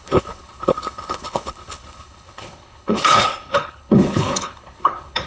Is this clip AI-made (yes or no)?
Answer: yes